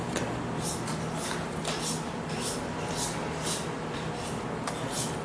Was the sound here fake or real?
real